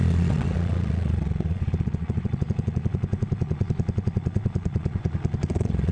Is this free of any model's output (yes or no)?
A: no